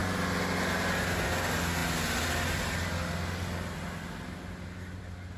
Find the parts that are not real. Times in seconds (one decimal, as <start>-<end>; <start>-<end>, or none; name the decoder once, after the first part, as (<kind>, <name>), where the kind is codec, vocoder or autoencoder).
none